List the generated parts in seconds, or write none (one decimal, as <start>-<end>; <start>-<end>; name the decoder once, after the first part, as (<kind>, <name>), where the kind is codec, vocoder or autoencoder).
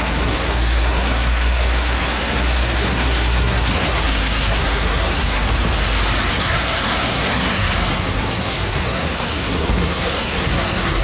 0.0-5.5 (codec, SNAC); 6.3-11.0